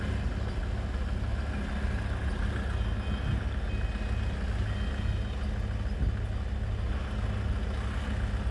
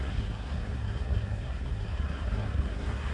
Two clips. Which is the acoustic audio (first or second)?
first